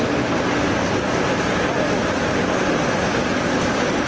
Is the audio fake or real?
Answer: real